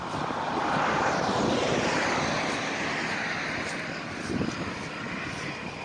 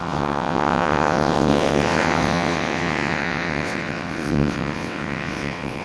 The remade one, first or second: second